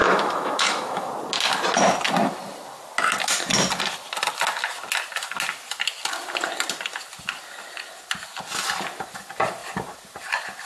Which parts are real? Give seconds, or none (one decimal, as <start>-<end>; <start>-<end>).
1.1-10.7